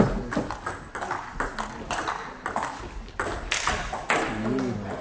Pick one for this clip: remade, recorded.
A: recorded